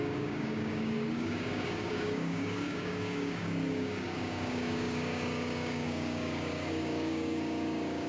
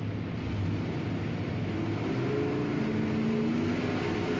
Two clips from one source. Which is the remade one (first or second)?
first